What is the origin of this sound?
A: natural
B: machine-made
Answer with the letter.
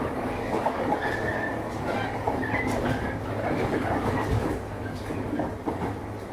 B